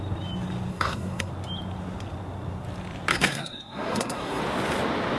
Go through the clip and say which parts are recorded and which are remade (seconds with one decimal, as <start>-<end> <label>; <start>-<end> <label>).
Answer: 0.0-0.7 recorded; 0.7-1.3 remade; 1.3-3.1 recorded; 3.1-4.4 remade; 4.4-5.2 recorded